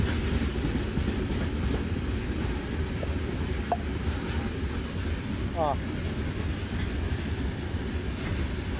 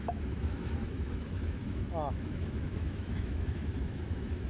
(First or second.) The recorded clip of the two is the first